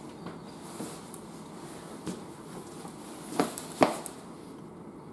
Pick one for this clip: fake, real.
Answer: real